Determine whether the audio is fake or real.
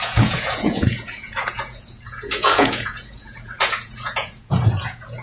fake